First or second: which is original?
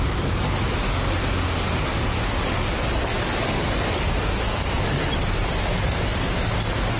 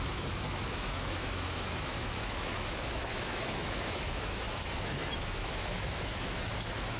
first